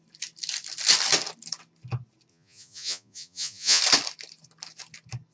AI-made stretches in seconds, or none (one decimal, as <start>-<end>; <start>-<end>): 2.3-3.8